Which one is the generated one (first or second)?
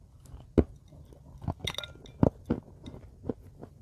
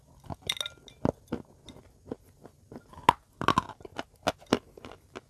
first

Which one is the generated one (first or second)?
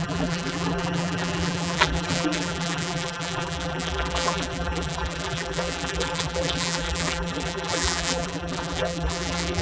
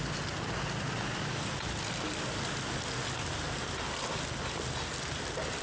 first